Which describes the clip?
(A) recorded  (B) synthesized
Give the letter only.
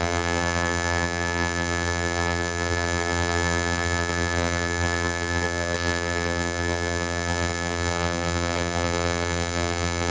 B